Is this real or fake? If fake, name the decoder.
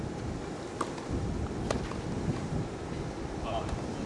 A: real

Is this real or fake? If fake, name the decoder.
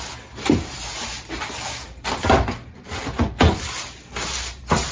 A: real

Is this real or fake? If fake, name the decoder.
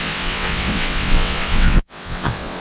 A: fake, vocoder, WaveNeXt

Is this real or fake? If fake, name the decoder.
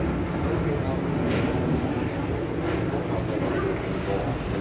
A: real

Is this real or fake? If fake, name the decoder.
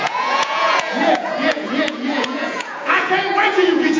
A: fake, vocoder, Vocos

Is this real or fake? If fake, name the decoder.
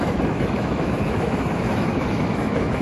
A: fake, autoencoder, DAC-VAE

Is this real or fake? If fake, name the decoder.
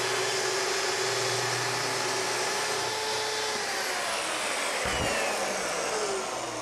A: real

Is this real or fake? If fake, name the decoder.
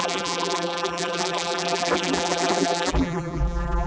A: fake, vocoder, BigVGAN v2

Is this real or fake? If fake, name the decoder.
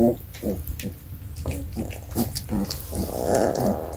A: real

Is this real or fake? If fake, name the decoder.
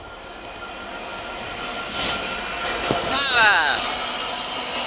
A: real